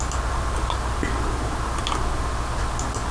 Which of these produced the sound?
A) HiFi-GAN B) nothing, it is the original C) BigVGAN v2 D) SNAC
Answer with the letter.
B